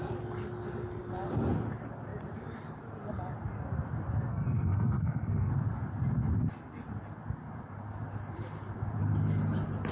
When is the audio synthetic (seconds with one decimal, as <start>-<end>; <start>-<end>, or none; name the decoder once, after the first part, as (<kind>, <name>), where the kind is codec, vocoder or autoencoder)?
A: 4.3-5.5 (codec, SNAC)